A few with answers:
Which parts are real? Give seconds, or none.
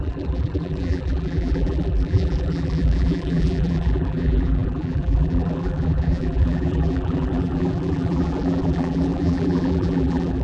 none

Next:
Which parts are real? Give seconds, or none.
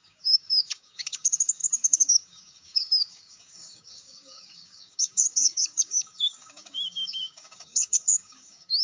none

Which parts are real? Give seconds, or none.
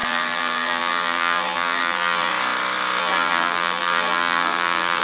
2.3-3.0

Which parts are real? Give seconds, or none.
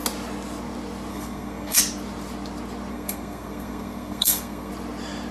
0.0-1.1; 1.8-2.9; 4.7-5.3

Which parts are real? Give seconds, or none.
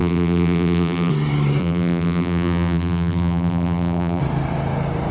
1.1-1.6; 4.2-5.1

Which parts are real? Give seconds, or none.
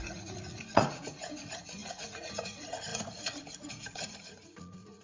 none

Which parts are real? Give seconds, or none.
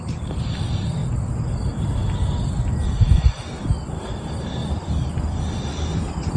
1.0-2.4; 5.9-6.4